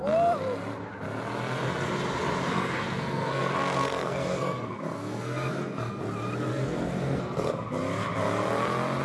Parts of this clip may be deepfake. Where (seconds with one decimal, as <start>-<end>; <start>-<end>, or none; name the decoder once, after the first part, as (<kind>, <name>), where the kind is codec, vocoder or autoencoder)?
2.5-6.0 (codec, SNAC); 6.5-7.5

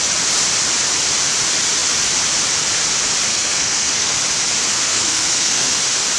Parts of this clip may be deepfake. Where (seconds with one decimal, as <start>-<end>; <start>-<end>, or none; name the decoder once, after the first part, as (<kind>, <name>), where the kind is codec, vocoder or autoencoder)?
3.3-4.2 (codec, SNAC); 4.7-5.8

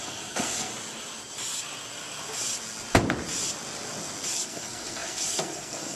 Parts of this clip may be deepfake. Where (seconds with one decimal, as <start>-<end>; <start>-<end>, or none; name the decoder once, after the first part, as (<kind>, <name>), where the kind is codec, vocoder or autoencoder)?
0.0-0.7 (codec, SNAC); 4.3-6.0

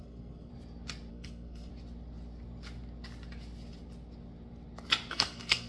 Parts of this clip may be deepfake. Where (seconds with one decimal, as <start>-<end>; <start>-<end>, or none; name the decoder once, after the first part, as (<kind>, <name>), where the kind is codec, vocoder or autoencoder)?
0.0-0.5 (codec, SNAC); 1.1-1.7; 5.1-5.7

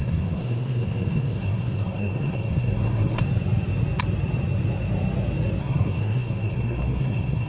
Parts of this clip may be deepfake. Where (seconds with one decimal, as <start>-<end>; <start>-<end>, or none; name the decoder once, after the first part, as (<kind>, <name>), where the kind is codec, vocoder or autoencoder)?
0.0-3.2 (codec, SNAC); 5.6-7.5

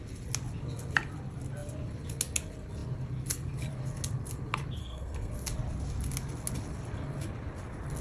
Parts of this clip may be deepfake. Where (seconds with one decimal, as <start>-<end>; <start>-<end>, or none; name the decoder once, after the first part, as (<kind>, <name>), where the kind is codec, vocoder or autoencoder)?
4.8-5.3 (codec, SNAC)

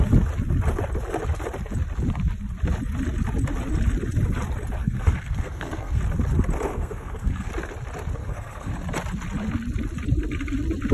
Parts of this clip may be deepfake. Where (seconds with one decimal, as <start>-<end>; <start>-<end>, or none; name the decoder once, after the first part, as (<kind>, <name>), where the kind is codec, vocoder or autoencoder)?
4.8-6.0 (codec, SNAC); 6.7-7.5; 8.2-8.7